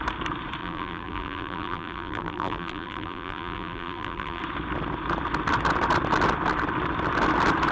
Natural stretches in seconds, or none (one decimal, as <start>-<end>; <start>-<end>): 0.0-0.6; 4.4-7.7